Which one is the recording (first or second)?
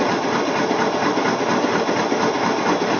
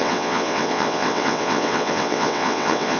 first